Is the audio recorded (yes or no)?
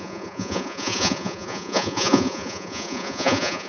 no